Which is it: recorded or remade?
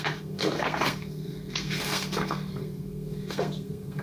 remade